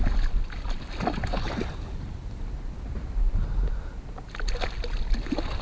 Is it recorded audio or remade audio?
recorded